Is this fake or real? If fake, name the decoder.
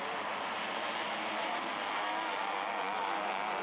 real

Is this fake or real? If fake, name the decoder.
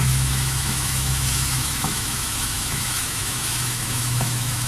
fake, autoencoder, DAC-VAE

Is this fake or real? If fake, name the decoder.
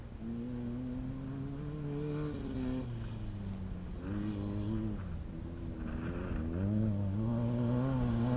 real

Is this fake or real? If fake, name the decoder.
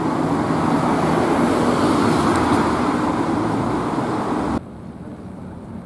real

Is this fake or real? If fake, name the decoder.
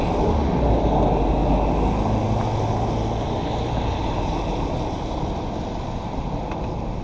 real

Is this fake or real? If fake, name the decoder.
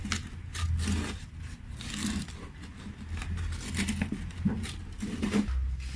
real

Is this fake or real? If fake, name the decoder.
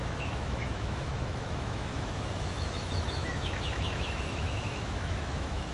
fake, autoencoder, DAC-VAE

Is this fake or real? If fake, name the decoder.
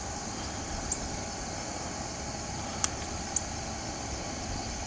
real